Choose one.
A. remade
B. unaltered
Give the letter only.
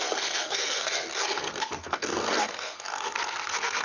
A